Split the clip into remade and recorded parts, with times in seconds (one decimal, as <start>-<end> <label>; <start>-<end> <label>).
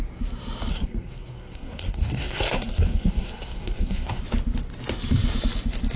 0.0-0.7 recorded; 0.7-4.2 remade; 4.2-6.0 recorded